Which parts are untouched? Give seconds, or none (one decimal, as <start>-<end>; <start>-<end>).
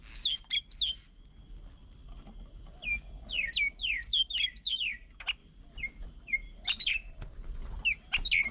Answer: 0.0-8.5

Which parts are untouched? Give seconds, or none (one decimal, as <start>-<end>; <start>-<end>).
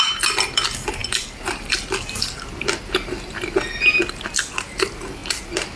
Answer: 0.0-5.8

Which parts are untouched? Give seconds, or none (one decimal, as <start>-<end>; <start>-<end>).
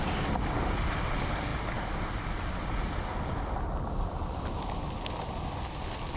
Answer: 0.0-6.2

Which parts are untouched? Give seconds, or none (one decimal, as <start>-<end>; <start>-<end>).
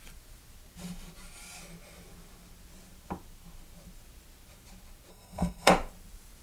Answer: 0.0-5.1; 5.7-6.4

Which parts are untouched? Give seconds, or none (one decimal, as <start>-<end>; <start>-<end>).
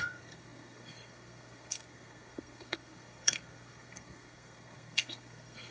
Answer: none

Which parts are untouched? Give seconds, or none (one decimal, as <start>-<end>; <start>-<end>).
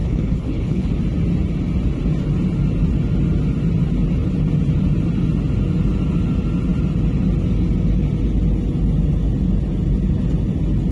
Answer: 0.9-10.9